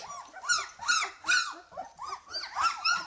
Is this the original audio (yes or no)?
yes